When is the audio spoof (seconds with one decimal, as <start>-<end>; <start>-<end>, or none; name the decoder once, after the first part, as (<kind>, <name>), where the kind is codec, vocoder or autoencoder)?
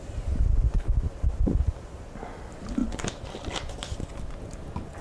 2.8-4.4 (vocoder, BigVGAN v2)